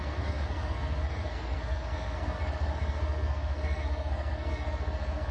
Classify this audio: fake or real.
fake